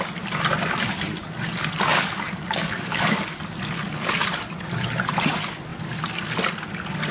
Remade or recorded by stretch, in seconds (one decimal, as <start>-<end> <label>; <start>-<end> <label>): 0.0-1.9 recorded; 1.9-3.4 remade; 3.4-7.1 recorded